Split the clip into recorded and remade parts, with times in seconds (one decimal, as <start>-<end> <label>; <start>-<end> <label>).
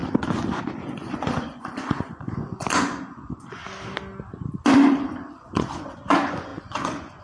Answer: 0.0-0.9 recorded; 0.9-3.6 remade; 3.6-5.3 recorded; 5.3-7.2 remade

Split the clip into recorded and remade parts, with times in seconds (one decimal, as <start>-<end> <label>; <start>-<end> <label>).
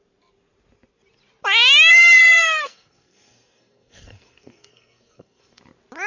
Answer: 0.0-1.9 recorded; 1.9-5.6 remade; 5.6-6.1 recorded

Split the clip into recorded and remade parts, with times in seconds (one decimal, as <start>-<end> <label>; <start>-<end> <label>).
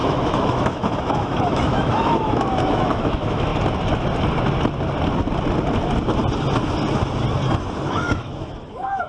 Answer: 0.0-3.5 remade; 3.5-7.8 recorded; 7.8-9.1 remade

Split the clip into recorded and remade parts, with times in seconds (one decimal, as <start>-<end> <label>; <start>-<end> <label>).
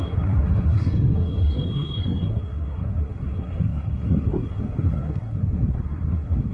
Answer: 0.0-6.5 remade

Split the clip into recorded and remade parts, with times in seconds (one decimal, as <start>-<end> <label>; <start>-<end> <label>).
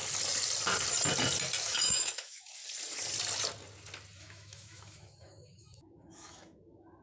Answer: 0.0-1.6 recorded; 1.6-2.6 remade; 2.6-4.2 recorded; 4.2-7.0 remade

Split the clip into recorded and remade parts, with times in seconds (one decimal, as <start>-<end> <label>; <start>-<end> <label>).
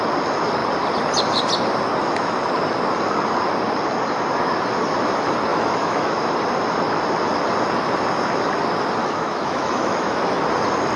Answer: 0.0-5.5 recorded; 5.5-6.2 remade; 6.2-9.0 recorded; 9.0-10.4 remade; 10.4-11.0 recorded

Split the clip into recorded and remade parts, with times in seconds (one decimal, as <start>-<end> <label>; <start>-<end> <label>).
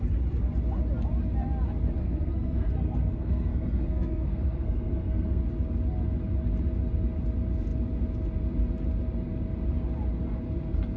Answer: 0.0-2.0 recorded; 2.0-5.4 remade; 5.4-11.0 recorded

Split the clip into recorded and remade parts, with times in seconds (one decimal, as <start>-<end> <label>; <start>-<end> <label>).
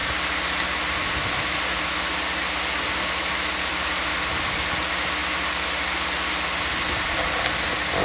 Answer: 0.0-8.0 recorded